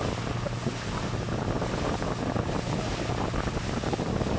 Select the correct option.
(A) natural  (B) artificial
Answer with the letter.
A